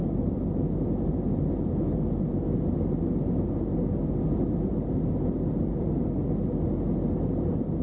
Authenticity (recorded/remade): recorded